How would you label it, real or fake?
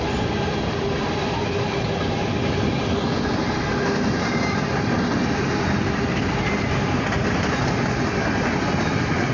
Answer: real